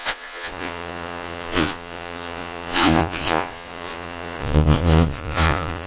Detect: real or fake fake